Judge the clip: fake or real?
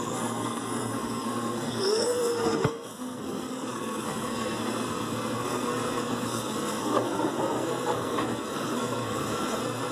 fake